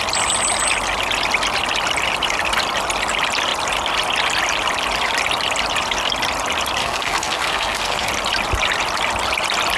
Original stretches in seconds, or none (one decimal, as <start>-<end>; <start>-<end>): 0.0-6.8; 8.1-9.8

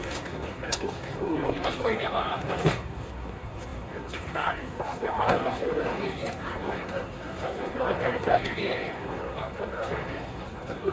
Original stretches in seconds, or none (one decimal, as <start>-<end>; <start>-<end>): none

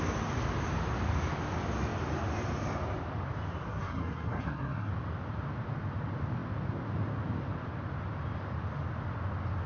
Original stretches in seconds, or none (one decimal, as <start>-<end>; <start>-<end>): 0.0-3.7; 4.9-9.7

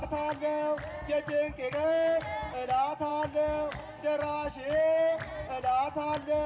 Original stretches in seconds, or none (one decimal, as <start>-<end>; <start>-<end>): 0.0-6.5

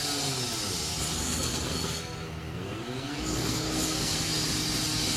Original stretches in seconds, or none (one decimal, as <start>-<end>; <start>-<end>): 0.0-1.2; 4.3-5.2

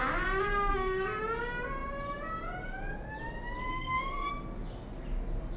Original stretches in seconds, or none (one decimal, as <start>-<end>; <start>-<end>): 0.0-0.7; 1.2-3.7; 4.3-5.6

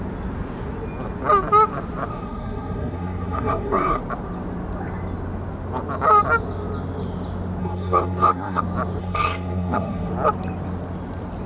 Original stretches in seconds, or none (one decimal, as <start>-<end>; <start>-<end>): 0.0-2.1; 4.0-7.6; 8.6-9.0; 10.1-11.5

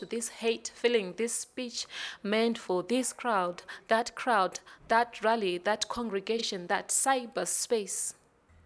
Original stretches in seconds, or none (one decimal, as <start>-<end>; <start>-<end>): 0.0-8.7